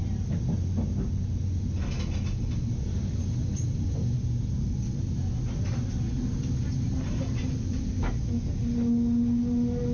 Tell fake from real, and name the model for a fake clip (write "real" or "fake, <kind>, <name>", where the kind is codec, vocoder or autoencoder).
real